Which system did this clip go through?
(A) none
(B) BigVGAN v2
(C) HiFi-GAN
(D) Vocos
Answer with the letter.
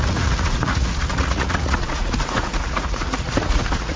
D